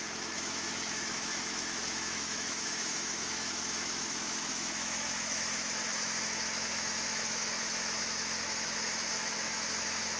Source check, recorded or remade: remade